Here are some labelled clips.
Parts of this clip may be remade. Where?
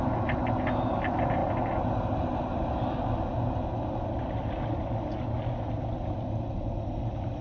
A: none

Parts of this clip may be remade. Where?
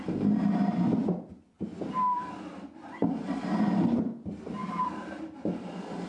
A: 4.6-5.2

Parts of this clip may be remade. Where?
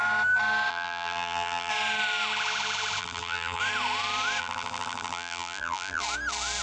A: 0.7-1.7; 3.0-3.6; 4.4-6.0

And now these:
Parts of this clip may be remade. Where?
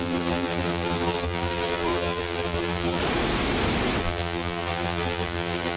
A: 0.0-3.0; 4.0-5.8